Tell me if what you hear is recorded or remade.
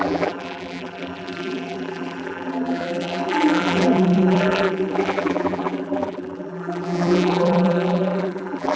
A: remade